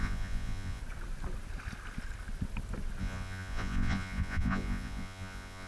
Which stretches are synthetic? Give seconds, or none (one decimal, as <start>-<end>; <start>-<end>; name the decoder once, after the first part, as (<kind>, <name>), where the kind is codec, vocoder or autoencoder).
0.0-0.8 (vocoder, Vocos); 3.0-5.7